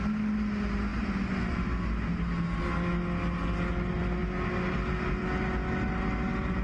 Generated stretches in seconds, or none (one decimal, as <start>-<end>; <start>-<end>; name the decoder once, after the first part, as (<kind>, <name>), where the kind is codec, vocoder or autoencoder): none

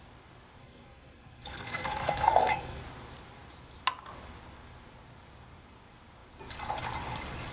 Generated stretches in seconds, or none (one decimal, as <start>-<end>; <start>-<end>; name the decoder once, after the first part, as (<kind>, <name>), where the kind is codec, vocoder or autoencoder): 0.6-2.8 (codec, SNAC)

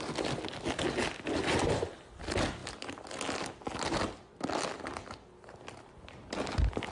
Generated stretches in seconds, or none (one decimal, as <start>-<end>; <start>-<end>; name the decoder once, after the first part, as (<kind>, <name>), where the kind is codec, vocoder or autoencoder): none

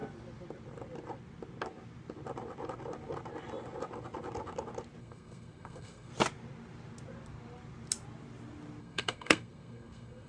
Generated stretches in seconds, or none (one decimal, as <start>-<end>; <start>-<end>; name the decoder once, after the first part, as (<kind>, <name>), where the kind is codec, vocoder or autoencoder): 5.0-6.1 (codec, SNAC); 8.8-10.3

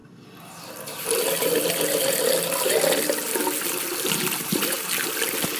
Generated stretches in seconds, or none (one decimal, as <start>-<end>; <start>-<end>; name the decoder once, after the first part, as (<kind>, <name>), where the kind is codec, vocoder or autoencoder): none

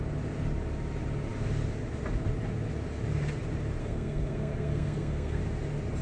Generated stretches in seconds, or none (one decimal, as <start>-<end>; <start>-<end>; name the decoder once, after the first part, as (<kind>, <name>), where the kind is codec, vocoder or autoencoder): 3.8-5.4 (codec, SNAC)